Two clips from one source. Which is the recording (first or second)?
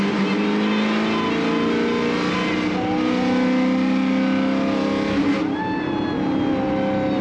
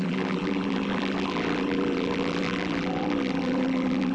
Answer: first